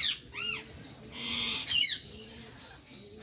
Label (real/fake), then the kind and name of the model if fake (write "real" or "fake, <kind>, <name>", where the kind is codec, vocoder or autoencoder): real